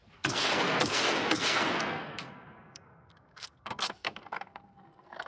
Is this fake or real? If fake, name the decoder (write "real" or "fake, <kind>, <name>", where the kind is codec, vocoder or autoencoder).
fake, codec, SNAC